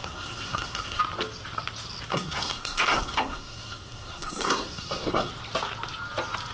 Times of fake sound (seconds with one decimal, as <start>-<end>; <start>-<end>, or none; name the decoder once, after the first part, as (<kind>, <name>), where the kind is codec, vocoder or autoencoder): 0.0-1.0 (codec, SNAC); 2.1-5.3

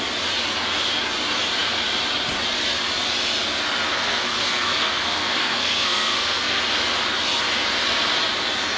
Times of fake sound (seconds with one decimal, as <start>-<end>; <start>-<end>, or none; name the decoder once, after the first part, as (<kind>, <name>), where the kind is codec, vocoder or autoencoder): 3.9-6.6 (codec, SNAC)

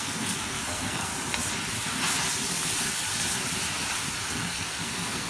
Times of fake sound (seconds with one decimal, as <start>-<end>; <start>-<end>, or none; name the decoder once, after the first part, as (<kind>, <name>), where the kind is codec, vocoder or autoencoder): 0.0-1.1 (codec, SNAC); 4.3-5.3

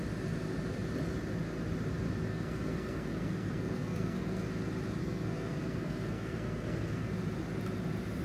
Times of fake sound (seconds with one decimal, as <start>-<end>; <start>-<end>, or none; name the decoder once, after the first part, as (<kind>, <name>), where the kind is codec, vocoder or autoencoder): 2.3-4.5 (codec, SNAC); 5.0-7.1

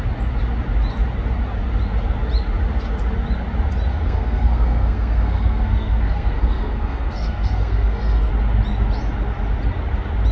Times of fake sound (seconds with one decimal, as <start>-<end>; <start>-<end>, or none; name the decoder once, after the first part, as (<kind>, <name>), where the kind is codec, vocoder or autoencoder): 3.9-8.3 (codec, SNAC)

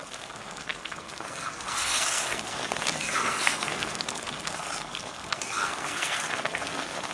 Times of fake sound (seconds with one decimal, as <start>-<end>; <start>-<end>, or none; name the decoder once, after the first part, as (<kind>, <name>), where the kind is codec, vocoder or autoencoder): 0.0-7.1 (codec, SNAC)